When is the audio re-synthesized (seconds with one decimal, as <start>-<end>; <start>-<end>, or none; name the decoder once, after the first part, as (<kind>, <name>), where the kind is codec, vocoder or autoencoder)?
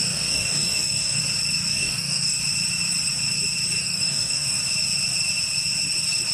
0.0-1.2 (codec, DAC); 1.7-2.4; 3.8-4.6